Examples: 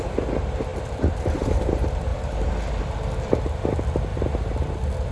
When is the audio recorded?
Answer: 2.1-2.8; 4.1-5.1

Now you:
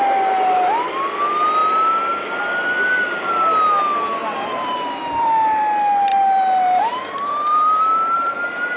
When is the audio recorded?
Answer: 0.0-4.2; 5.6-6.1

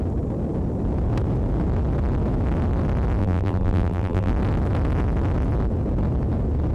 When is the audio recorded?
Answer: 0.0-3.2; 4.3-6.7

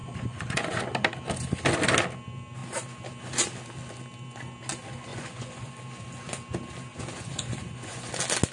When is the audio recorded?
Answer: 0.8-5.1; 5.7-6.9; 8.1-8.5

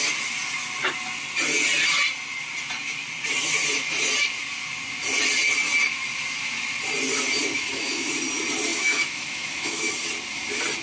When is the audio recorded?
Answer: 0.0-7.4; 8.1-8.7; 9.9-10.8

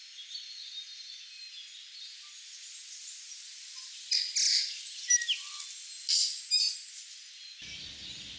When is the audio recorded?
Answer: 0.0-8.4

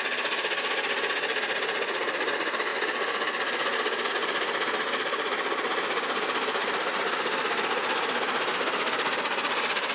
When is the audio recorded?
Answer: 0.0-9.9

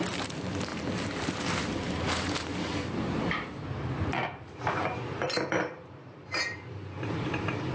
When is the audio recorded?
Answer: none